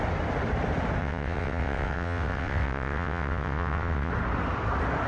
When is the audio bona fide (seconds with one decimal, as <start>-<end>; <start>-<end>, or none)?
0.0-1.0; 4.1-5.1